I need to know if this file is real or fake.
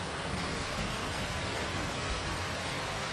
fake